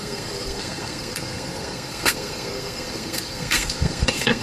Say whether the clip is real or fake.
fake